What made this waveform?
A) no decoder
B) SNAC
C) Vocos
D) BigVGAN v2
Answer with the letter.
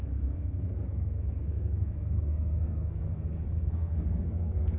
B